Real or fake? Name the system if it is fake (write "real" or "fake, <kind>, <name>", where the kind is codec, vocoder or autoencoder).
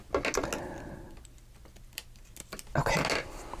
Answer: real